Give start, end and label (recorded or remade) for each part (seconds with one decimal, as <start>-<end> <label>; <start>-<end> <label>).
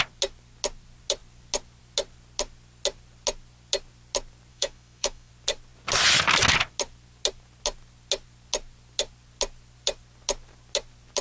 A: 0.0-4.5 recorded; 4.5-5.3 remade; 5.3-11.2 recorded